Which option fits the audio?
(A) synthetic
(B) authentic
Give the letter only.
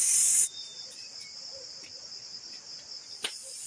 B